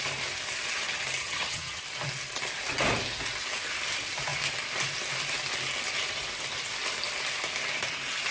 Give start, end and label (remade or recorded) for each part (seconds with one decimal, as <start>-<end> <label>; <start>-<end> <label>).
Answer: 0.0-1.2 recorded; 1.2-1.8 remade; 1.8-8.3 recorded